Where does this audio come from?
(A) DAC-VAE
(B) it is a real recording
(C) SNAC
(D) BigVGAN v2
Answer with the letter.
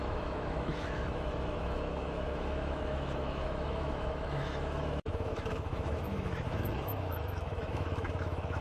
A